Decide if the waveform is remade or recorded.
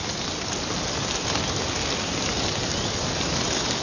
recorded